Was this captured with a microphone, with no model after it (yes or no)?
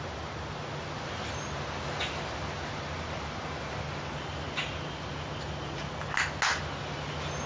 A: yes